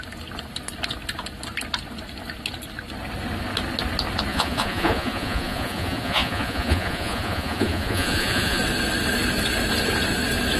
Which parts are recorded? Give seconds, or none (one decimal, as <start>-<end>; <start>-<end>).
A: 0.0-4.3; 8.6-10.6